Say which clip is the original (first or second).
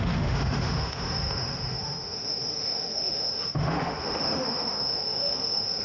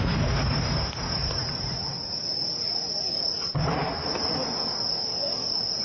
second